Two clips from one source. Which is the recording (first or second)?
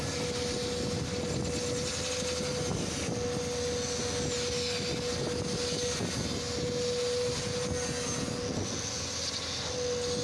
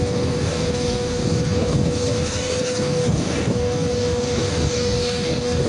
first